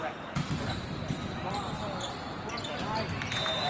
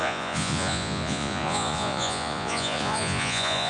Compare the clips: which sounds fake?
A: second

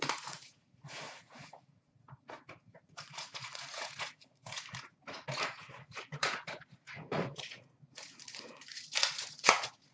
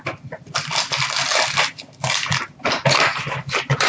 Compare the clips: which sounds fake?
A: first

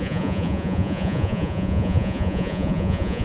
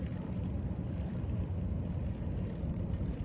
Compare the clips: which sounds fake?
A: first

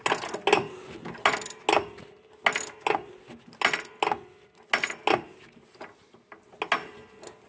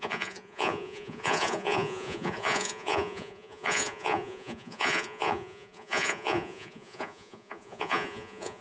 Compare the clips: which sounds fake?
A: second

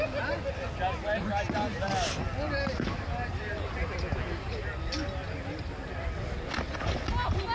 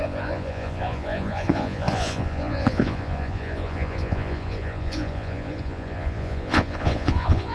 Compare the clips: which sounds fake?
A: second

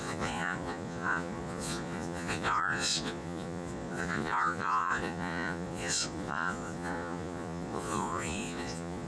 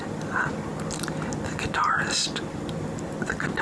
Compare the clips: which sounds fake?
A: first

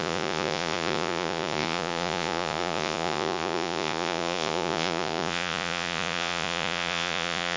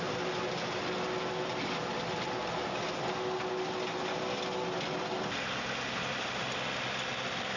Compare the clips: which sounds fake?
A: first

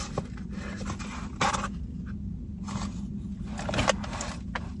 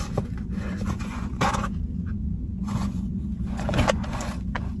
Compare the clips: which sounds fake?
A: second